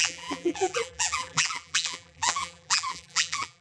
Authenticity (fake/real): fake